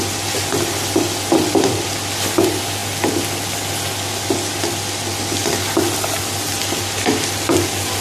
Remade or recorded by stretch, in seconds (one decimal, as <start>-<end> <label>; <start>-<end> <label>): 0.0-8.0 recorded